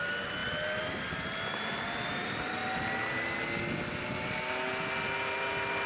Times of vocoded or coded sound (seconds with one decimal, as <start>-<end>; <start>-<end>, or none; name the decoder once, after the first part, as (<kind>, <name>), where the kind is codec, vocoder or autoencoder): none